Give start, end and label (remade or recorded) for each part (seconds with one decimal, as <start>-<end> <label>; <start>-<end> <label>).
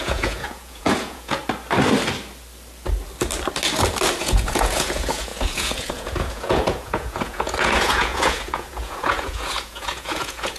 0.0-1.4 remade; 1.4-4.2 recorded; 4.2-10.6 remade